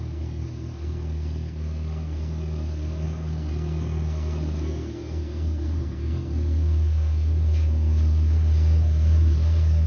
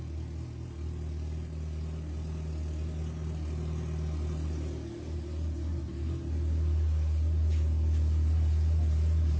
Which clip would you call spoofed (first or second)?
first